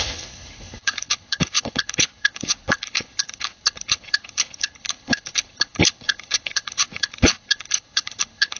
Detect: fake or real fake